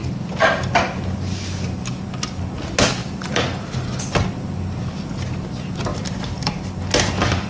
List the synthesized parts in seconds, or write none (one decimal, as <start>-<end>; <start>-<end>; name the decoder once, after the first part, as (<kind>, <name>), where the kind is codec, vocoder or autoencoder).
3.0-3.7 (vocoder, BigVGAN v2); 5.9-6.9